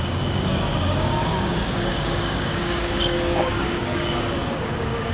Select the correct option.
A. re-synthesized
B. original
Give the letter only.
A